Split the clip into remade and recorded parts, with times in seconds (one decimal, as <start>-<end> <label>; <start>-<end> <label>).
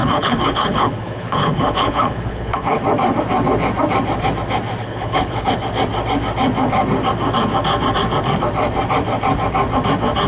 0.0-2.8 remade; 2.8-4.8 recorded; 4.8-5.5 remade; 5.5-10.3 recorded